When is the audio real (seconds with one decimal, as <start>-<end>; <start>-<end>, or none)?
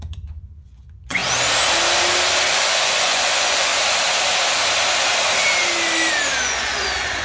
1.2-2.5; 3.7-6.4